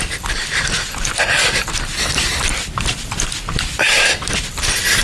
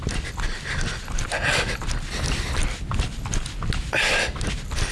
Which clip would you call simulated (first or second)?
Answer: first